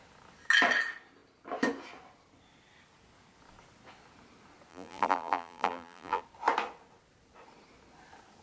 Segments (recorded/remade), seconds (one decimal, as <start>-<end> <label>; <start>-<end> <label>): 0.0-4.7 recorded; 4.7-6.2 remade; 6.2-8.4 recorded